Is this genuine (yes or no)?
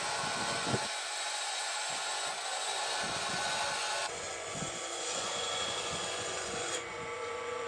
no